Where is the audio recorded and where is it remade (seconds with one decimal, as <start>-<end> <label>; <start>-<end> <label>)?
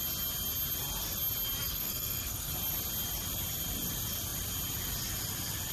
0.0-1.7 recorded; 1.7-2.5 remade; 2.5-5.7 recorded